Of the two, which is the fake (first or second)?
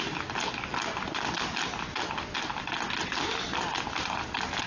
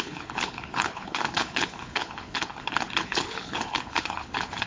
second